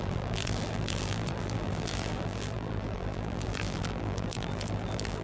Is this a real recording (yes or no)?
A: no